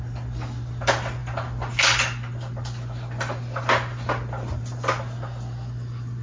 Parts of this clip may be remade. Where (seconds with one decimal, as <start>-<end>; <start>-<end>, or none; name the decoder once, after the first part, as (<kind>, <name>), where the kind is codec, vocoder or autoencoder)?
none